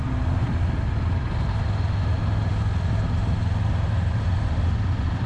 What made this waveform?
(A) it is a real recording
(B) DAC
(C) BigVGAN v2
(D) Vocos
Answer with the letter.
A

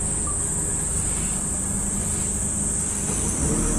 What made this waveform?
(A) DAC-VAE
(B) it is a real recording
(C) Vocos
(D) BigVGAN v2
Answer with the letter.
B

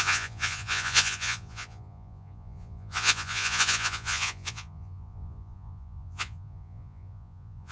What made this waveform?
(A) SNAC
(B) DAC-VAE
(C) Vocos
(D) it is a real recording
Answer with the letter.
C